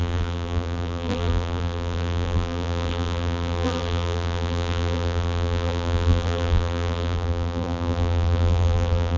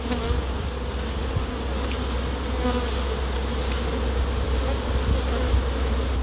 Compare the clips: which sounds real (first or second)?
second